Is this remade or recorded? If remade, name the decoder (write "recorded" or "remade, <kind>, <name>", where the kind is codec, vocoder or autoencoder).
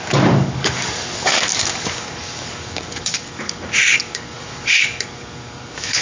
remade, codec, DAC